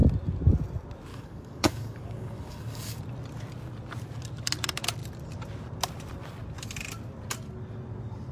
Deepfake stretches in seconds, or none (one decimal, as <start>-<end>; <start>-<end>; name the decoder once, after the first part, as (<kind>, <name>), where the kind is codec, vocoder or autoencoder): 1.1-3.0 (codec, DAC)